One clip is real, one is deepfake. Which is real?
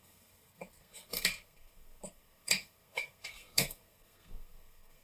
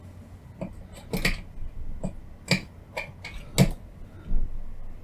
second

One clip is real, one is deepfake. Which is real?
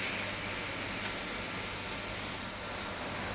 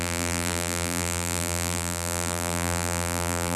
first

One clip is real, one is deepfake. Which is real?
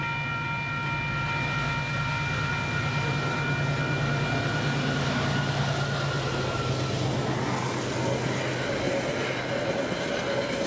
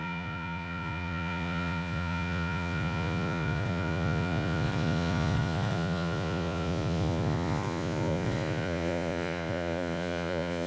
first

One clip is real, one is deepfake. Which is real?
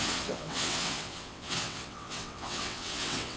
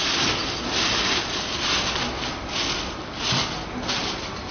second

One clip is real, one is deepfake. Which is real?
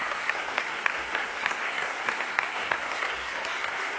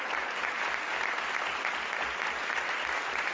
second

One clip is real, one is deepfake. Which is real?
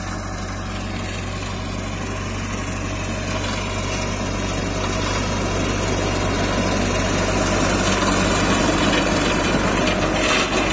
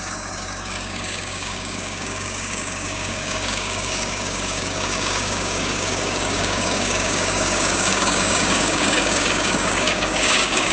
first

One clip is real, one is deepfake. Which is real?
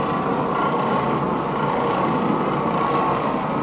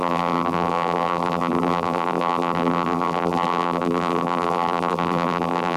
first